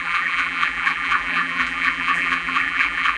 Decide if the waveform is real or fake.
fake